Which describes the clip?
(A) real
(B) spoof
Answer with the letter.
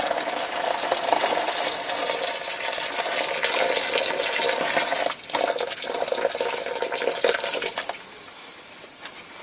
A